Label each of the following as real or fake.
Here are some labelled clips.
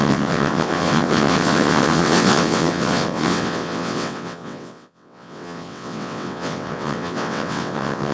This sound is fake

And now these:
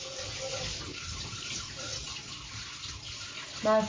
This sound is real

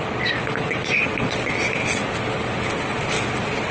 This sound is real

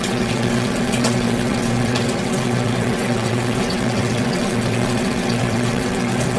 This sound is fake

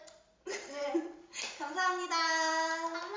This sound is real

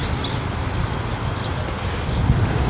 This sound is real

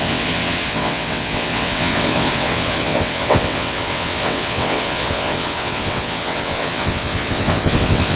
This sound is fake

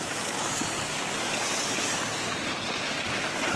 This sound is real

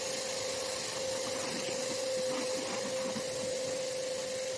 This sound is real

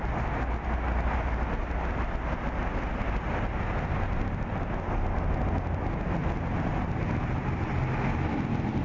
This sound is real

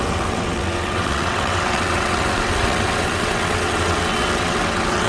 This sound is fake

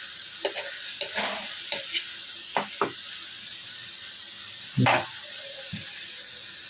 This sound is real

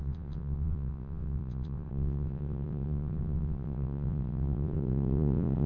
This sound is fake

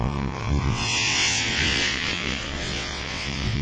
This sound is fake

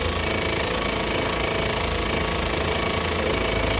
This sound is real